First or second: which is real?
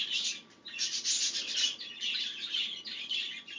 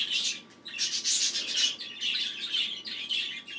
second